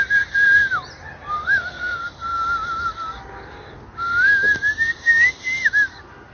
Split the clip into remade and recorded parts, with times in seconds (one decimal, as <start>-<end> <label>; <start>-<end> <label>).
0.0-1.4 recorded; 1.4-2.0 remade; 2.0-6.3 recorded